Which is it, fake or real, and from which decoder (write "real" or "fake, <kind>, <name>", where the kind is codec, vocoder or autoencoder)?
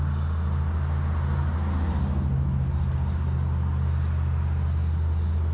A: real